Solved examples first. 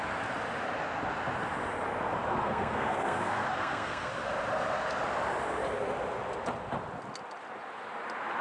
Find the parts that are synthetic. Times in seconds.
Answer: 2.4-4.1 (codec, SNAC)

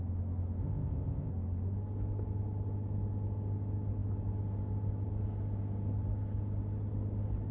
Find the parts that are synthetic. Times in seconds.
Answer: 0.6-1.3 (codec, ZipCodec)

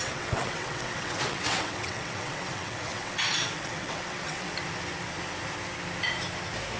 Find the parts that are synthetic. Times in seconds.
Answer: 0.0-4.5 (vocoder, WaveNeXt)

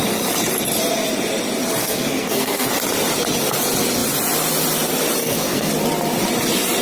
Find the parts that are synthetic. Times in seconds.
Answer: 1.8-2.7 (codec, SNAC); 5.2-5.7

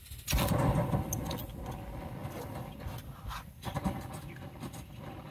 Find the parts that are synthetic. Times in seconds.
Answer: none

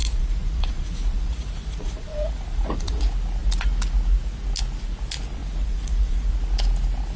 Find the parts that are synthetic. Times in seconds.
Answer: 0.0-3.0 (vocoder, Vocos); 5.4-6.3

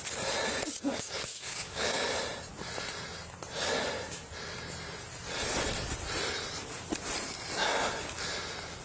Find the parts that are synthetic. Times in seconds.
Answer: 0.9-2.1 (codec, DAC)

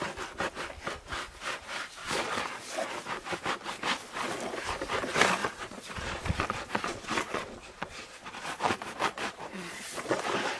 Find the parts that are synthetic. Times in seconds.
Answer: 2.0-2.6 (vocoder, Vocos); 5.4-10.2